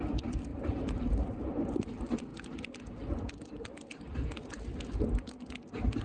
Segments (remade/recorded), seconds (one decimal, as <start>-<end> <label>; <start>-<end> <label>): 0.0-6.0 recorded